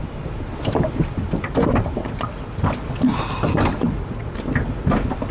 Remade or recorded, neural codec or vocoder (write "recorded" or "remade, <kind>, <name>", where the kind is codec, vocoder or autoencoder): recorded